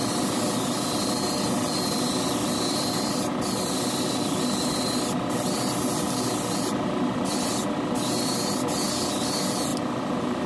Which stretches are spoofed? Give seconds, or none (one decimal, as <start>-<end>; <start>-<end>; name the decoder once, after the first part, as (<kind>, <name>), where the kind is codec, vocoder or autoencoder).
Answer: none